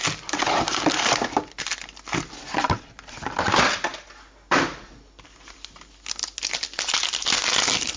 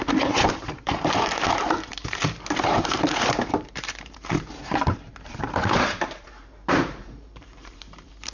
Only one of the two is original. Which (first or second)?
first